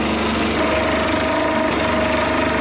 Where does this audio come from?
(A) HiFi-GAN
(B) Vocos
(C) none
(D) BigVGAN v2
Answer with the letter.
C